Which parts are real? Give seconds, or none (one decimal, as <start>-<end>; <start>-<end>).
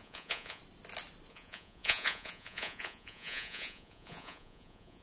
0.6-1.3